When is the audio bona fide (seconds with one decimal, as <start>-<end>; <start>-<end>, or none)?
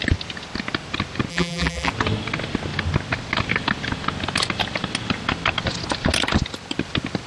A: 0.0-1.3; 1.9-7.3